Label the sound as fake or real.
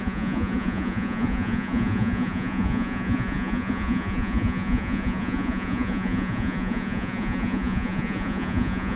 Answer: fake